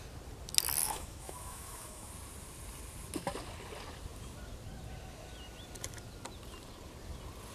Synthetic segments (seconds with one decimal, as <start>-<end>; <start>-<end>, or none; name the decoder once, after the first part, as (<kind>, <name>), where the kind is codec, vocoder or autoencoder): 0.8-2.1 (autoencoder, DAC-VAE)